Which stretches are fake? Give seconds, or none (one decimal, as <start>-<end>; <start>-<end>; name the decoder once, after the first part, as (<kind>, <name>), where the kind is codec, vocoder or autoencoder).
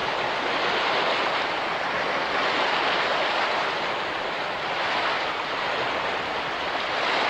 0.0-0.9 (vocoder, BigVGAN v2); 3.1-7.3